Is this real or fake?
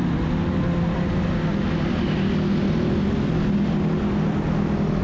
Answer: real